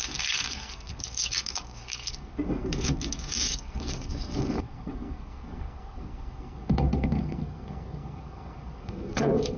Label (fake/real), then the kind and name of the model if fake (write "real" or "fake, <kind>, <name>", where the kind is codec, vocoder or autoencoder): fake, codec, SNAC